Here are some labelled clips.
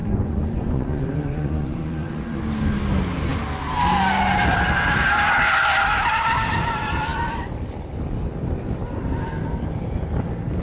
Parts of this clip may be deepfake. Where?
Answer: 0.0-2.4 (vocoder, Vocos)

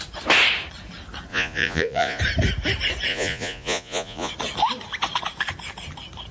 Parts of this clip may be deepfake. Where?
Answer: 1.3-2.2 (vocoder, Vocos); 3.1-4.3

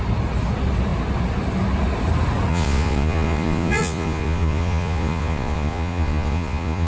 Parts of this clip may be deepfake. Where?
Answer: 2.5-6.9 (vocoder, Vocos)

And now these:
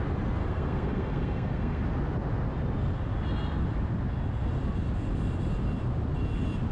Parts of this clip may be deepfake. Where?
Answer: 0.4-1.8 (codec, SNAC)

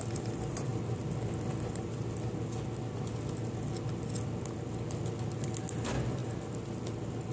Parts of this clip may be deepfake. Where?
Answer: none

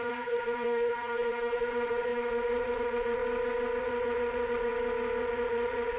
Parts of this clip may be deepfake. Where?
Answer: 0.0-3.2 (vocoder, Vocos); 3.8-4.7; 5.2-6.0

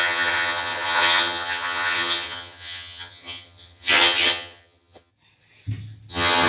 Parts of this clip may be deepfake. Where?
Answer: 0.0-5.1 (vocoder, HiFi-GAN); 6.1-6.5

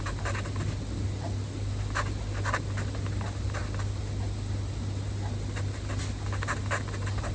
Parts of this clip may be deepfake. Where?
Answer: none